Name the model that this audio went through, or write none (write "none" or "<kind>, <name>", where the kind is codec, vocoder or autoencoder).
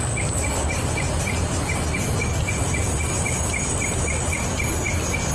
none